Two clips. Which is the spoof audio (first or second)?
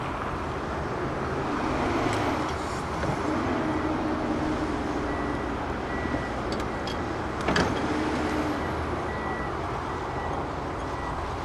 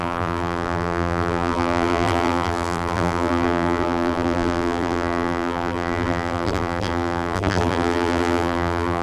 second